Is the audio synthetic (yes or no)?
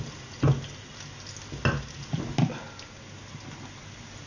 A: no